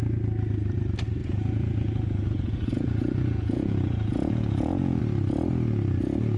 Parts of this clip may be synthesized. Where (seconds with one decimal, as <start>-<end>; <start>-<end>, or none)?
1.2-5.0